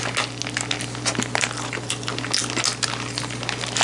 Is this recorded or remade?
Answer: recorded